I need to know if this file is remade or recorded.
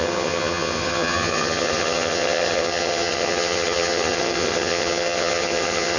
remade